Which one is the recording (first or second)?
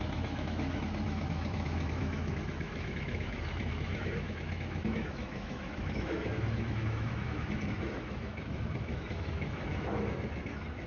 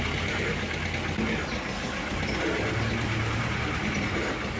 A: second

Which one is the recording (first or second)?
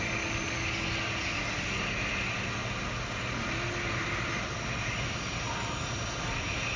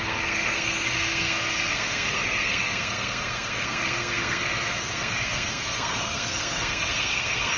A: first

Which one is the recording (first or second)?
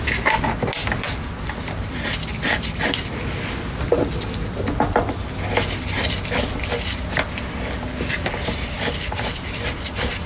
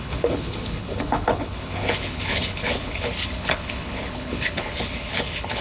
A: first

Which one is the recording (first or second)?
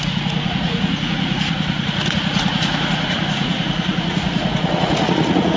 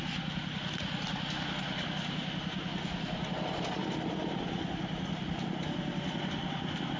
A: second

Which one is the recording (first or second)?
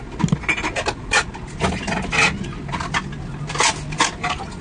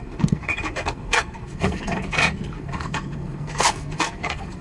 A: first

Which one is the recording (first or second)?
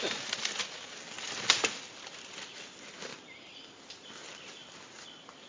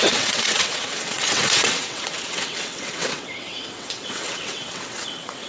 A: first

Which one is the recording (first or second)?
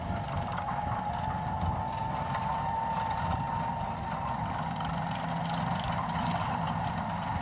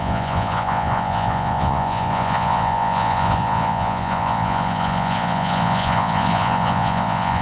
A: first